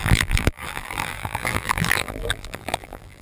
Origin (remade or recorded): remade